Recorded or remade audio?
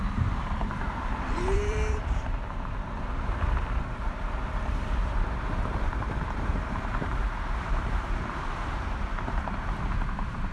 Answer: remade